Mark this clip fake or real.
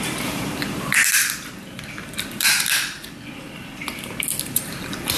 fake